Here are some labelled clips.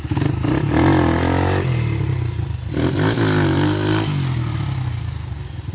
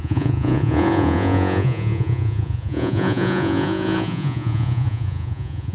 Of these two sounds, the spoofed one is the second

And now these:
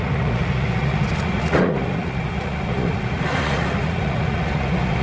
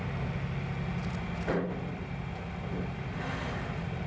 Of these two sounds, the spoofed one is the first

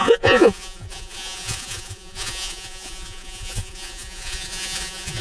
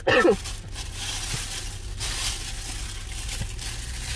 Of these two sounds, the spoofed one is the first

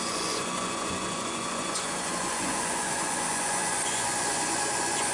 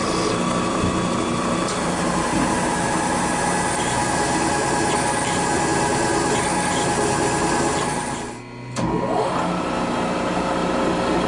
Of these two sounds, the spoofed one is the first